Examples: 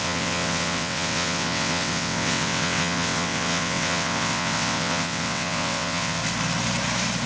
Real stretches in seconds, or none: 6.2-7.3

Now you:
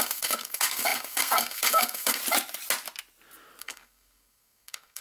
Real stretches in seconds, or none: 2.2-3.6

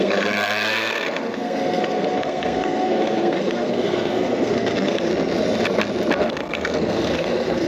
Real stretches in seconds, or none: 5.1-6.2

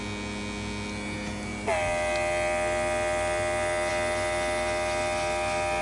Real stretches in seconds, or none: 0.0-5.8

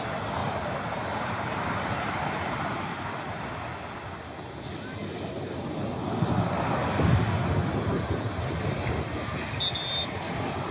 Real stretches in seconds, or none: 0.0-0.4; 3.5-7.6; 8.9-10.7

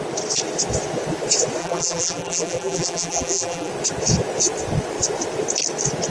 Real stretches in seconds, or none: 0.0-1.6; 3.7-6.1